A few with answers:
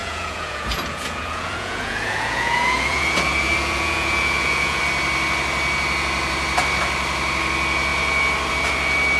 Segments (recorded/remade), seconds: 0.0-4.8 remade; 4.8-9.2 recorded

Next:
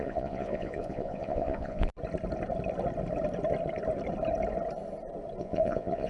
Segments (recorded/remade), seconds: 0.0-1.9 remade; 1.9-5.4 recorded; 5.4-6.1 remade

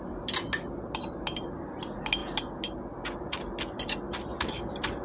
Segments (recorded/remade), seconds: 0.0-5.0 recorded

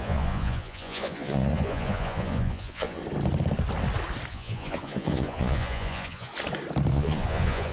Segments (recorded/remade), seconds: 0.0-3.0 remade; 3.0-4.3 recorded; 4.3-6.3 remade; 6.3-6.9 recorded; 6.9-7.7 remade

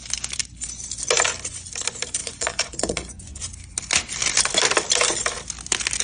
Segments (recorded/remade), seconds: 0.0-2.2 recorded; 2.2-3.4 remade; 3.4-6.0 recorded

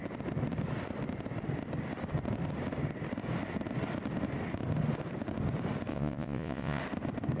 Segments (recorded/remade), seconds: 0.0-5.9 recorded; 5.9-6.8 remade; 6.8-7.4 recorded

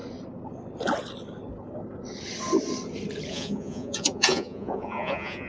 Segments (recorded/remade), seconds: 0.0-3.3 recorded; 3.3-5.5 remade

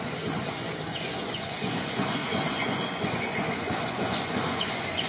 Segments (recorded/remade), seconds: 0.0-5.1 remade